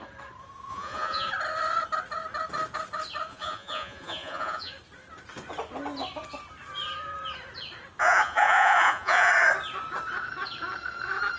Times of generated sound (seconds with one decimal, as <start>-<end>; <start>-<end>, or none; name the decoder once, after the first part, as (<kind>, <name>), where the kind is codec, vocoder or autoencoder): 0.7-1.3 (vocoder, Vocos); 3.3-4.7; 8.0-9.3